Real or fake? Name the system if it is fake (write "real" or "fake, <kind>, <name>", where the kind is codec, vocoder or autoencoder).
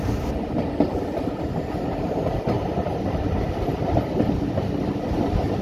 real